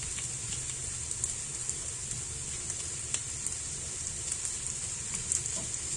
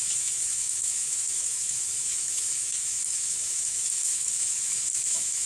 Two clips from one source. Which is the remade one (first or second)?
second